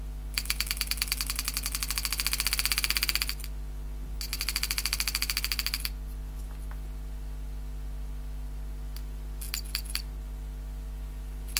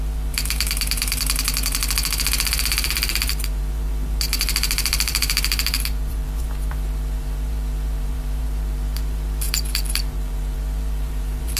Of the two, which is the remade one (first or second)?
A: second